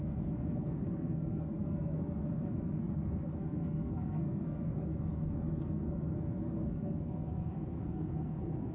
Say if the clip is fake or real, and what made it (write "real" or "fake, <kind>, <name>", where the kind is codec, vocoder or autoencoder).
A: fake, codec, SNAC